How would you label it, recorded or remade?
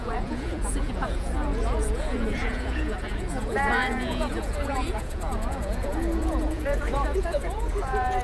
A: remade